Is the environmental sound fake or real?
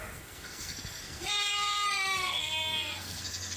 fake